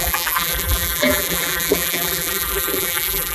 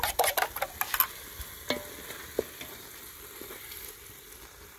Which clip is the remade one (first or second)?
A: first